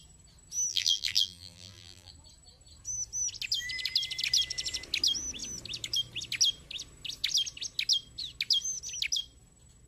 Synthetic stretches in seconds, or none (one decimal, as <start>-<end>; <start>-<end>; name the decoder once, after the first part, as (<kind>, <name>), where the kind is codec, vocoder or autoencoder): 0.7-2.1 (vocoder, BigVGAN v2)